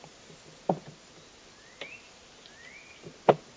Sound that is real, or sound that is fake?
real